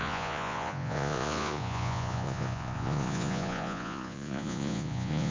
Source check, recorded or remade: remade